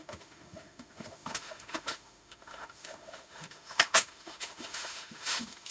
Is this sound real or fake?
fake